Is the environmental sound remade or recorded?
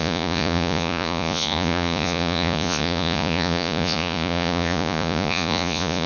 remade